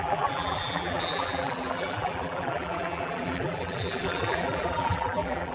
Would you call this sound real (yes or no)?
no